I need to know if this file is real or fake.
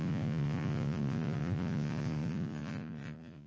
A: fake